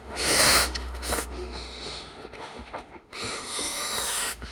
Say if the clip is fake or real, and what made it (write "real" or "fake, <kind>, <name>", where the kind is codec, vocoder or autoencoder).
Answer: fake, autoencoder, DAC-VAE